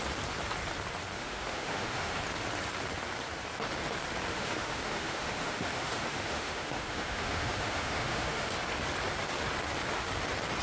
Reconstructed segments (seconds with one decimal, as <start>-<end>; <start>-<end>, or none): 1.2-2.2; 4.3-8.5